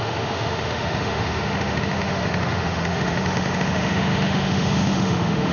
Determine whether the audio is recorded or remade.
remade